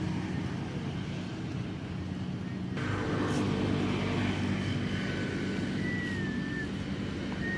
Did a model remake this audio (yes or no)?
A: no